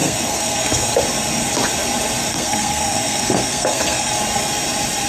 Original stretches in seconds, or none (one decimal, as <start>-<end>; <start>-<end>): 0.9-2.3; 4.1-5.1